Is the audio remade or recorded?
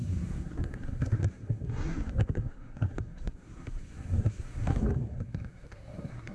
remade